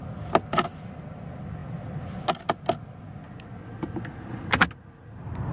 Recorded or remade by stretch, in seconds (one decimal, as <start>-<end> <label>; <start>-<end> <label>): 0.0-5.5 recorded